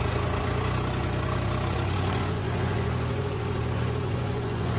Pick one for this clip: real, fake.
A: fake